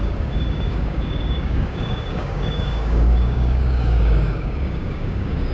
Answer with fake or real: fake